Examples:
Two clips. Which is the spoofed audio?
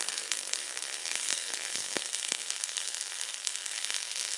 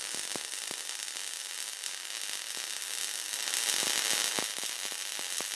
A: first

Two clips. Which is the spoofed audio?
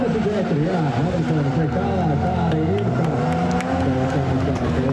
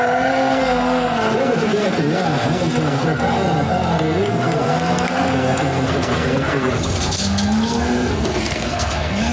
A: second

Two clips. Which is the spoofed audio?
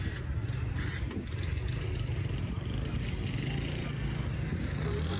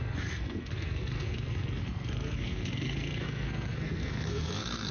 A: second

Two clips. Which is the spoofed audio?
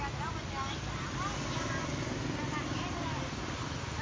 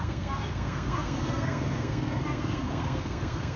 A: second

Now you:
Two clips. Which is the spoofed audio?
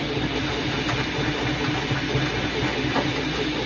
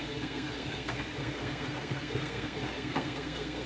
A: second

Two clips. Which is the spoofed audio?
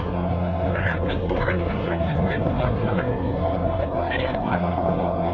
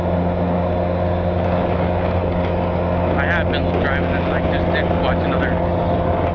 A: first